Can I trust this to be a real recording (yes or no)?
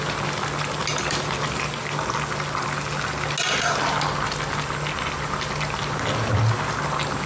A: yes